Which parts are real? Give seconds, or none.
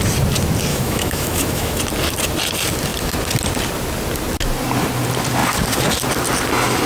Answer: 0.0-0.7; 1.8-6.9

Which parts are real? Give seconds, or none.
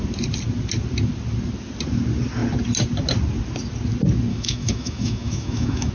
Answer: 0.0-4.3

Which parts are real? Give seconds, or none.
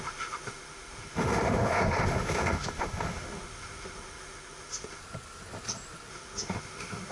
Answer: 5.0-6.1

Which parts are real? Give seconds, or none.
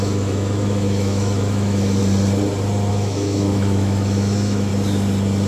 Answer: 2.0-2.9; 4.7-5.5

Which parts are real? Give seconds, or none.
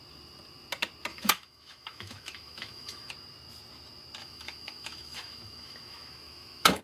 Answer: 0.0-1.1; 3.1-4.2